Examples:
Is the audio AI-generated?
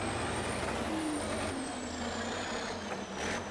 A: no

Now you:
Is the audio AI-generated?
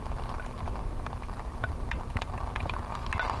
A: no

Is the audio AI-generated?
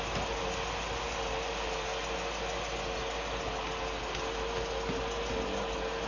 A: no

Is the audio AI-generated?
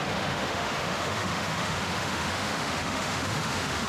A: yes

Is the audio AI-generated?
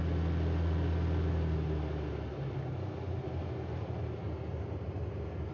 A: no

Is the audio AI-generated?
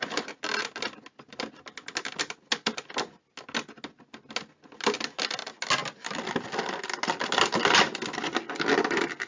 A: no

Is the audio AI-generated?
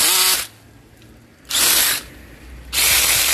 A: no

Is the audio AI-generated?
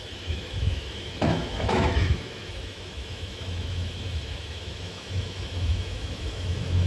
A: yes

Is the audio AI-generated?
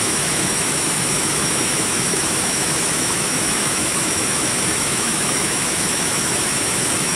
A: yes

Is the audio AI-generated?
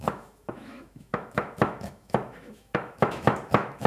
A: yes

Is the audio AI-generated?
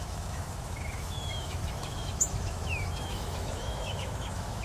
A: yes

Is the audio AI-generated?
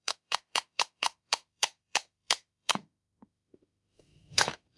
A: yes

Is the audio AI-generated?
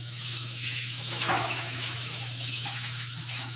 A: yes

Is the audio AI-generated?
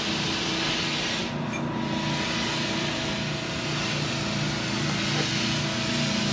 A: no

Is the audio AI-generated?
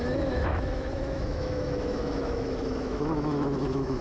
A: yes